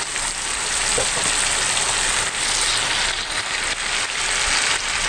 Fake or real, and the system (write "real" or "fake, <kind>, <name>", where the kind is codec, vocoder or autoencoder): real